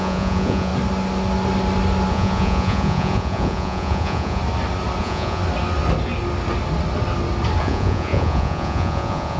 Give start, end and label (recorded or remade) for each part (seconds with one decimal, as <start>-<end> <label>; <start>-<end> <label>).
0.0-0.7 remade; 0.7-2.1 recorded; 2.1-4.4 remade; 4.4-5.0 recorded; 5.0-5.4 remade; 5.4-7.6 recorded; 7.6-9.4 remade